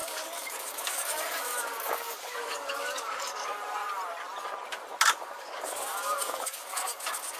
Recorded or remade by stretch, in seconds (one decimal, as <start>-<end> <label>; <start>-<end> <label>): 0.0-3.5 remade; 3.5-5.1 recorded; 5.1-7.4 remade

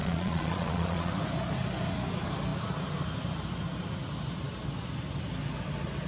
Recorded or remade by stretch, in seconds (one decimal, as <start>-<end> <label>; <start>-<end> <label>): 0.0-1.1 remade; 1.1-6.1 recorded

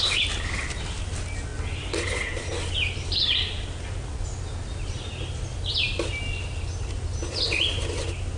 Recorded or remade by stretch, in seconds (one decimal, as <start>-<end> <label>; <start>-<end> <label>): 0.0-8.4 recorded

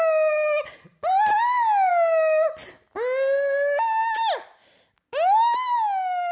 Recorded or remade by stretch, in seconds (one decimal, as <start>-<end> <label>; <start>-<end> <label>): 0.0-6.3 recorded

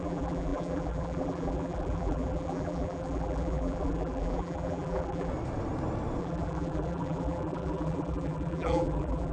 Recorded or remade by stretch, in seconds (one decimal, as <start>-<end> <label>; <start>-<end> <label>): 0.0-5.3 remade; 5.3-6.2 recorded; 6.2-9.3 remade